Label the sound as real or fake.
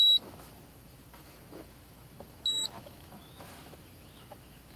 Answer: fake